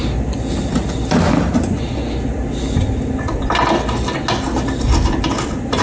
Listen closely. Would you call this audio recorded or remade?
recorded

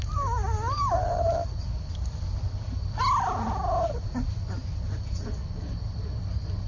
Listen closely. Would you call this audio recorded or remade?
recorded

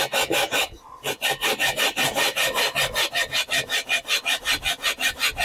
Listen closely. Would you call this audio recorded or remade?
recorded